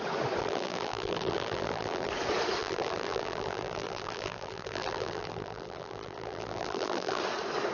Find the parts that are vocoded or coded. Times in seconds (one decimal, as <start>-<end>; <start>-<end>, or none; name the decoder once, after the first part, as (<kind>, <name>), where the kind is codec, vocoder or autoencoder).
0.4-2.1 (vocoder, BigVGAN v2); 2.6-7.2

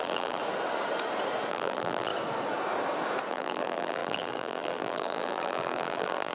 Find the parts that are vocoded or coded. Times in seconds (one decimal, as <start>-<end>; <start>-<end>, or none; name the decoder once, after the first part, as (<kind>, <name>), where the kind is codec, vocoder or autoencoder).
0.0-0.4 (vocoder, BigVGAN v2); 1.5-2.1; 3.3-6.3

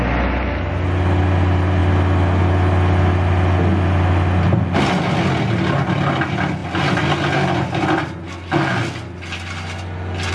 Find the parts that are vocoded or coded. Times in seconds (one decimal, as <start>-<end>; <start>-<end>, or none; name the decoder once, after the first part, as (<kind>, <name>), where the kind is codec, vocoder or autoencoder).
none

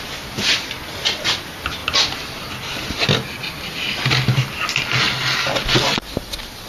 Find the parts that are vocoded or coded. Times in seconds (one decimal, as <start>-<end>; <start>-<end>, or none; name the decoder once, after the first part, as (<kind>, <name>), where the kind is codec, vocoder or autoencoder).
none

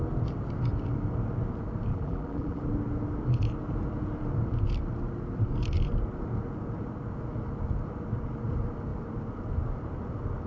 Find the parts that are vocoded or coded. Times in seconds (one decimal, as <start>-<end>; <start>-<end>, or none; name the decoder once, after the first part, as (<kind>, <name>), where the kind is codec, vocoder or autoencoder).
1.9-2.6 (vocoder, BigVGAN v2)